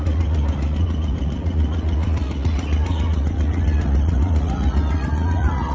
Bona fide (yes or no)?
no